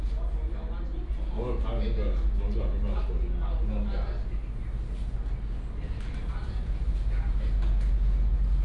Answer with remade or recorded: recorded